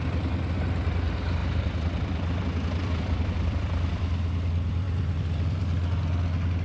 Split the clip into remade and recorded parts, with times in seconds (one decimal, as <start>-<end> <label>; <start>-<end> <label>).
0.0-1.4 recorded; 1.4-2.4 remade; 2.4-2.8 recorded; 2.8-5.6 remade; 5.6-6.6 recorded